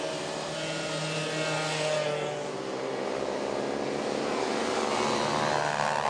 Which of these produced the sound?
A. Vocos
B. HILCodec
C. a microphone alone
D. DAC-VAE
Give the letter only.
C